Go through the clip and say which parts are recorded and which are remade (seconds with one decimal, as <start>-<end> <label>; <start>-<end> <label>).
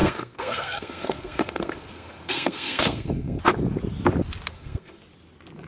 0.0-3.4 remade; 3.4-4.5 recorded; 4.5-5.0 remade; 5.0-5.7 recorded